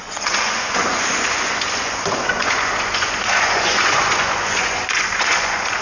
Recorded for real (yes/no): no